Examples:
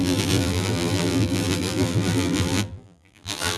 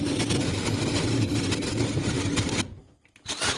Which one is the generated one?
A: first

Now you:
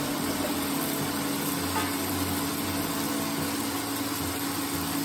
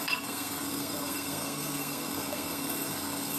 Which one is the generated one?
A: second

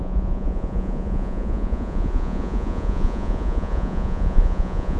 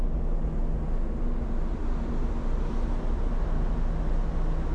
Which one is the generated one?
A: first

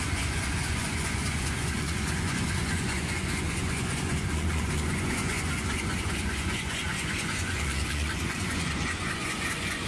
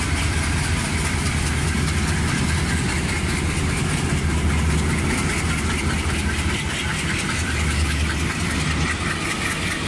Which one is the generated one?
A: first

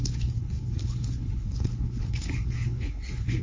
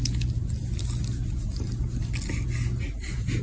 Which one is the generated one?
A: first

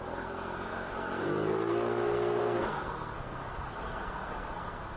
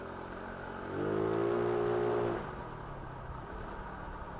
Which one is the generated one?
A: first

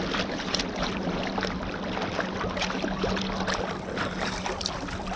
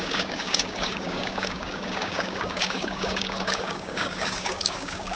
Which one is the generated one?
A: second